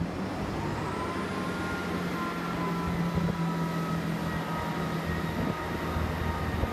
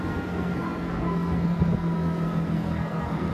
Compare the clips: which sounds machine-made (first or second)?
second